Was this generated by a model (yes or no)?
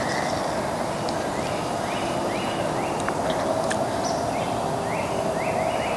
no